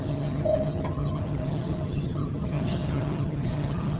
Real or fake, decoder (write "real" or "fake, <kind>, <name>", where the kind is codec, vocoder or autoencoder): fake, vocoder, HiFi-GAN